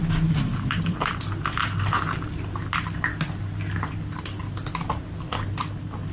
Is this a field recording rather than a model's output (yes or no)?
yes